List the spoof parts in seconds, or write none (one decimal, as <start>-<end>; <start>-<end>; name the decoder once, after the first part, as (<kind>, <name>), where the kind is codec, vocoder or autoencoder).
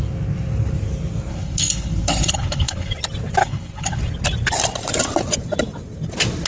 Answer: 1.3-2.9 (codec, HILCodec); 3.4-4.0